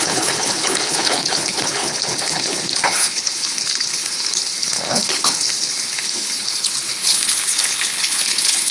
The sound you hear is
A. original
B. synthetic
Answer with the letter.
B